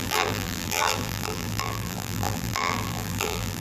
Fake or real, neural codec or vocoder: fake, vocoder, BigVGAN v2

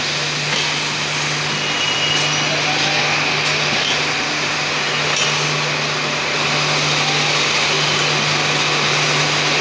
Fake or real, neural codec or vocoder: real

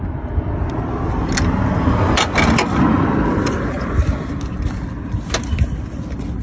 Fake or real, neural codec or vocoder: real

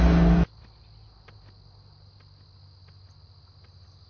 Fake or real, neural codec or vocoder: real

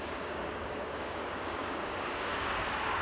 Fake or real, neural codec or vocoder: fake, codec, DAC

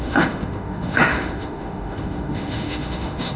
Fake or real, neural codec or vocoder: fake, autoencoder, DAC-VAE